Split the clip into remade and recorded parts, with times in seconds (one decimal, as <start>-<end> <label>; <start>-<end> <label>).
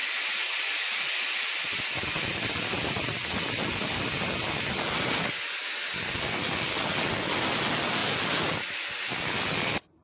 0.0-10.0 recorded